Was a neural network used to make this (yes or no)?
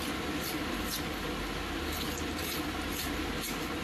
no